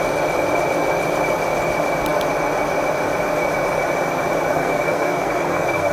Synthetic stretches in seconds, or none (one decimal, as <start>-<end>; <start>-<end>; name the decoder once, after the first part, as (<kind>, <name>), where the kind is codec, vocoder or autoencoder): 4.5-5.9 (codec, SNAC)